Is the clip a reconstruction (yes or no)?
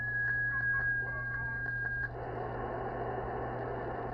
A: no